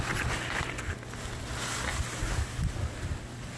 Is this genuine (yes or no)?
yes